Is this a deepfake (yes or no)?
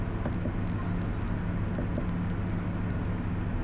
no